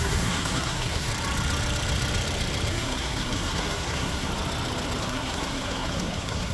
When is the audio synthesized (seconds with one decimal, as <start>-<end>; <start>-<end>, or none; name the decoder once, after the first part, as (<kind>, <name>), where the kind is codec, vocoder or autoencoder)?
0.0-1.1 (codec, SNAC); 2.7-4.3; 5.0-6.5